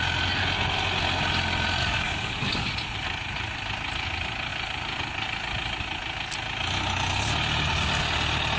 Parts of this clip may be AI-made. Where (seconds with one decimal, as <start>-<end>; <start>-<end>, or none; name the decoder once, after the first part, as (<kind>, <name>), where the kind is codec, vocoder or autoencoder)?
1.8-2.7 (codec, DAC)